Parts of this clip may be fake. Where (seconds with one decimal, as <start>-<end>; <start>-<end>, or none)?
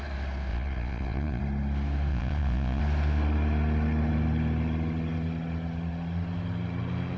0.5-1.4; 2.1-2.8